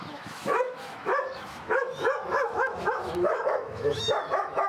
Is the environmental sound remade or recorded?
remade